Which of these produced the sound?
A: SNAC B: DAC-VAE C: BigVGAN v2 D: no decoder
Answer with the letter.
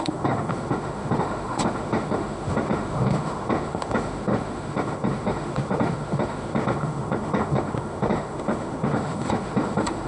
B